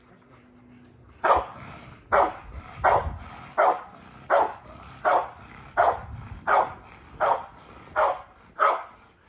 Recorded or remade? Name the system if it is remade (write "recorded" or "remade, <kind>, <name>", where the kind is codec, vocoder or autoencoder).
recorded